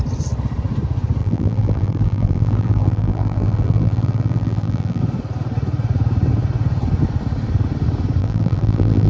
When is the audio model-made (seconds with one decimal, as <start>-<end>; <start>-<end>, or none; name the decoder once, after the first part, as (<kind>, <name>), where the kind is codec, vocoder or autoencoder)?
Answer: 1.2-5.0 (vocoder, BigVGAN v2); 8.2-9.1